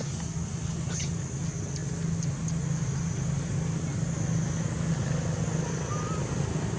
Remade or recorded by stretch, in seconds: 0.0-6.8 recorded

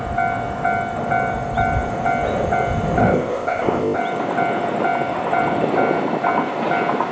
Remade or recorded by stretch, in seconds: 0.0-3.0 recorded; 3.0-4.0 remade; 4.0-7.1 recorded